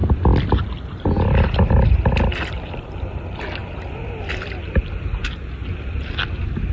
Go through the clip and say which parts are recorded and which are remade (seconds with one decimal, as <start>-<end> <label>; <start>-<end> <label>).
0.0-6.7 recorded